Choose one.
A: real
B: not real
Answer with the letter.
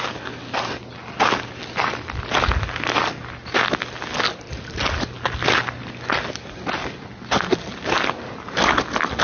A